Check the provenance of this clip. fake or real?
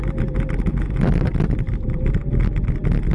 real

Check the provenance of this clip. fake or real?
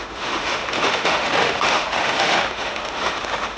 fake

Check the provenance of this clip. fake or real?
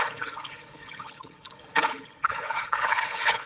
fake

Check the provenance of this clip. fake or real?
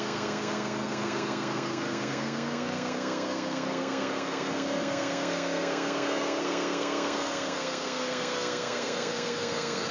fake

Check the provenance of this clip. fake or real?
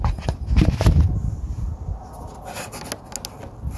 real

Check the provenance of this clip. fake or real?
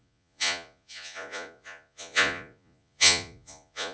fake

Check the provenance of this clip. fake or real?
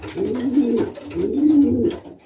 real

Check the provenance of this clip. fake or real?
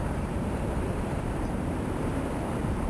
fake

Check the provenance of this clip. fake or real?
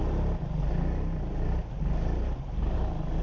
real